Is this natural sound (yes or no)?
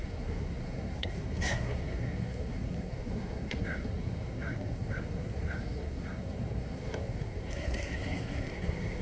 no